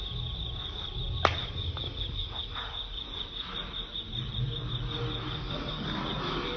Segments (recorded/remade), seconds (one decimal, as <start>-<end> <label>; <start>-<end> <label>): 0.0-6.6 recorded